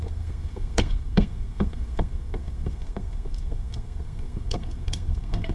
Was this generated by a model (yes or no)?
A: yes